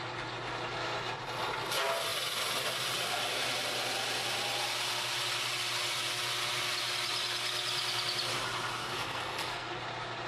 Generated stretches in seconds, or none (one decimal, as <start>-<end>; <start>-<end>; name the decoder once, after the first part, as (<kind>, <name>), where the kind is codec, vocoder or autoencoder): 8.8-9.8 (codec, SNAC)

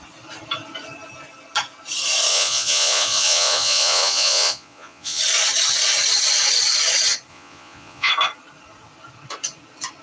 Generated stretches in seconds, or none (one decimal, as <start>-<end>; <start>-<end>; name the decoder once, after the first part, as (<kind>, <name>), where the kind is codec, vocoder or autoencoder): 2.3-5.2 (vocoder, Vocos); 7.3-8.1

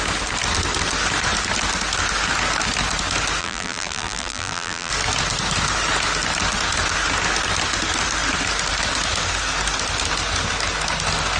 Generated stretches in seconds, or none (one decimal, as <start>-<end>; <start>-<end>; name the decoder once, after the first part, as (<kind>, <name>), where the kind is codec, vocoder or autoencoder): 3.4-4.9 (vocoder, BigVGAN v2)

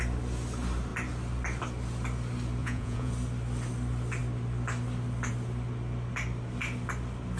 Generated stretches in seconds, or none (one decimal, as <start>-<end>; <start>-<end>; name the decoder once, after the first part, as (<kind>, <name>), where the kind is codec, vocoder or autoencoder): 2.6-3.1 (vocoder, Vocos)